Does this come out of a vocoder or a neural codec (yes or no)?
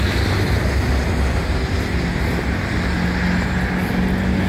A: no